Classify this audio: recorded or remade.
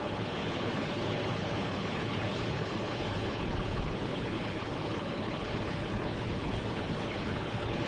remade